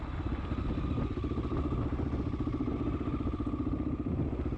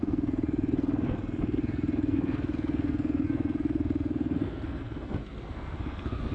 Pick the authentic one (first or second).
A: first